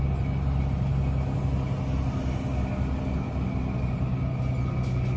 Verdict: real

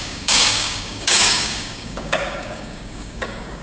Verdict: fake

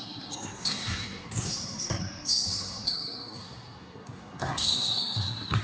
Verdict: fake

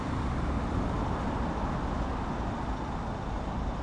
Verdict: real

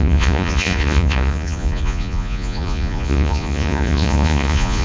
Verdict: fake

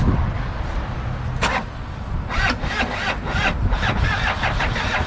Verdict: real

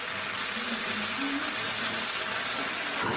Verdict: real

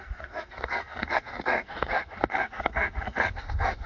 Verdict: fake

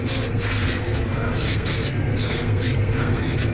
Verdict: fake